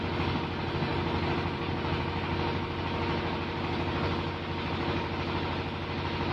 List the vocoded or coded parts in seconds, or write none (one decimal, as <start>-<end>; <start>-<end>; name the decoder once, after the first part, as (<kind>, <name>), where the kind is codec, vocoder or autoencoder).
none